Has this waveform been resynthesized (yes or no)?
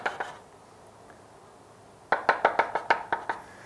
no